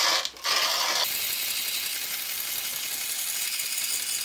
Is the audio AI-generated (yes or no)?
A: no